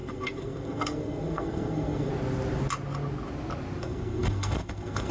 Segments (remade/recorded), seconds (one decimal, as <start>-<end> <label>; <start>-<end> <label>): 0.0-2.1 remade; 2.1-3.8 recorded; 3.8-5.1 remade

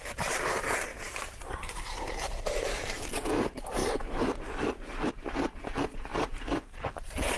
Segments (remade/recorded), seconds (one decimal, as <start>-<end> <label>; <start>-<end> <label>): 0.0-7.4 remade

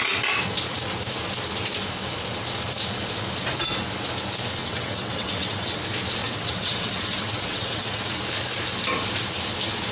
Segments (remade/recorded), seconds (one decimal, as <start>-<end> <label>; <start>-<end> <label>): 0.0-4.6 recorded; 4.6-5.8 remade; 5.8-6.2 recorded; 6.2-8.0 remade; 8.0-9.9 recorded

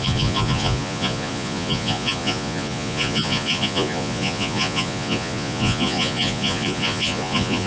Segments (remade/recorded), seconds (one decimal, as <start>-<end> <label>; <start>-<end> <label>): 0.0-7.7 remade

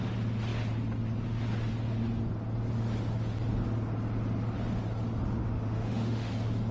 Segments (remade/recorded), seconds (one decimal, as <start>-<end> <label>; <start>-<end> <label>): 0.0-5.4 recorded; 5.4-6.3 remade; 6.3-6.7 recorded